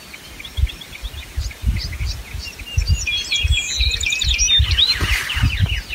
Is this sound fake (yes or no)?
no